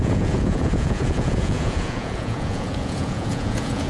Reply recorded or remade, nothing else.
remade